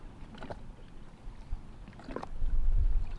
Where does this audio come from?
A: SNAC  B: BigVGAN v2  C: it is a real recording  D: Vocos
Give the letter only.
B